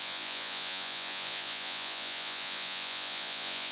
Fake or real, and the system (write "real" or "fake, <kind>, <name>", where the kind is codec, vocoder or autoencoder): fake, vocoder, Vocos